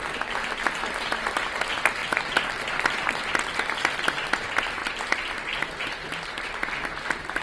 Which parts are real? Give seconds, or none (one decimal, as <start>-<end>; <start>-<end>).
0.0-7.4